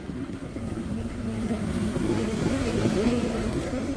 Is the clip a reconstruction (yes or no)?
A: yes